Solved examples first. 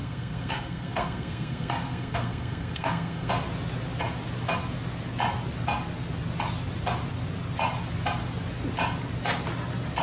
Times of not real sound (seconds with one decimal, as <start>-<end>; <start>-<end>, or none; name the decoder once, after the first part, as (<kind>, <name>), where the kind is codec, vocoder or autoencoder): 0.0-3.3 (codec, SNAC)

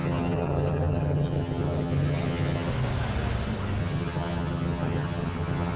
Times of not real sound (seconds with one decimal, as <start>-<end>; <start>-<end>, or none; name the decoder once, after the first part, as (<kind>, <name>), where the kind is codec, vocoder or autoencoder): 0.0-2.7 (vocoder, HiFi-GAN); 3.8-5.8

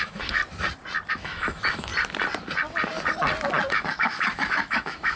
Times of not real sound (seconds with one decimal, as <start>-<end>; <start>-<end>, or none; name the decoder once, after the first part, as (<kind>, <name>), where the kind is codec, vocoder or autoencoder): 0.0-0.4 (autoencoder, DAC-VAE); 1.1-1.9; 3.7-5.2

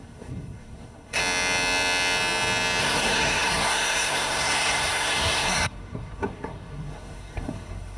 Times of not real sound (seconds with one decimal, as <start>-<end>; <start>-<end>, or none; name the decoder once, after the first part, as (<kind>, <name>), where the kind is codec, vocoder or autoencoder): 0.0-1.2 (codec, SNAC); 2.8-8.0

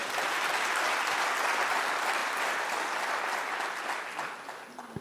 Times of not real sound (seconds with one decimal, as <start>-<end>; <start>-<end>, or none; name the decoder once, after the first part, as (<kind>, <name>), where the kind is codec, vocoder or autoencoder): none

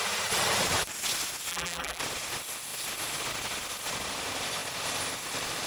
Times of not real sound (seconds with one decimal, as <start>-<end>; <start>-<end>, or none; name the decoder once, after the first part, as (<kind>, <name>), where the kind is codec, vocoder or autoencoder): 1.5-2.0 (vocoder, BigVGAN v2)

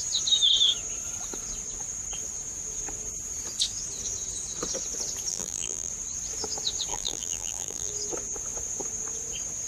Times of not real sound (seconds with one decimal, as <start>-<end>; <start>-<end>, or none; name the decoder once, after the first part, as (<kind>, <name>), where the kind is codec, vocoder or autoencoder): 5.3-5.9 (vocoder, BigVGAN v2); 6.9-7.9

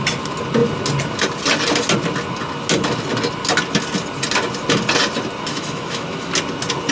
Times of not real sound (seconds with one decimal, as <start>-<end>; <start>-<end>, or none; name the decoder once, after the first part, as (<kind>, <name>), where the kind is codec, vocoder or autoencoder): 5.5-6.3 (autoencoder, DAC-VAE)